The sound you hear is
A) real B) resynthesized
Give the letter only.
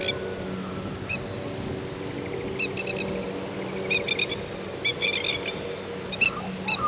A